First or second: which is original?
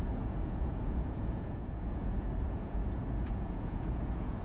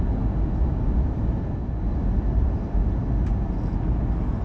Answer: second